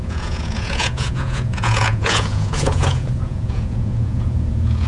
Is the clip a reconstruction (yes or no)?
yes